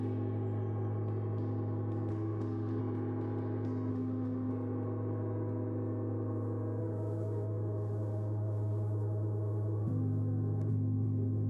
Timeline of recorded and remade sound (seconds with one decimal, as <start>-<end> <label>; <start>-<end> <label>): 0.0-2.1 recorded; 2.1-2.8 remade; 2.8-3.9 recorded; 3.9-4.5 remade; 4.5-6.8 recorded; 6.8-11.5 remade